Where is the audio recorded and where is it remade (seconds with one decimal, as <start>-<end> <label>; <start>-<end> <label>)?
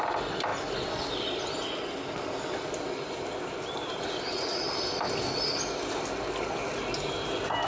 0.0-7.7 recorded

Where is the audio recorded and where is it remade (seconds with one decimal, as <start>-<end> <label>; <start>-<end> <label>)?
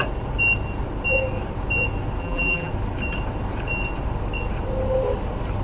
0.0-2.2 recorded; 2.2-2.7 remade; 2.7-5.6 recorded